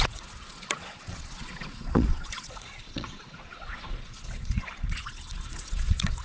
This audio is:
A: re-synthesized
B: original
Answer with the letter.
A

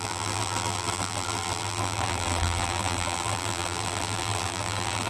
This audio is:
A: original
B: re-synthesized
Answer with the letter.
B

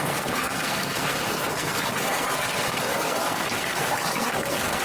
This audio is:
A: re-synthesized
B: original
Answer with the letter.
A